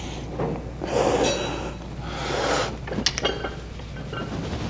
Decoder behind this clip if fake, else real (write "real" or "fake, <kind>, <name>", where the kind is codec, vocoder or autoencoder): real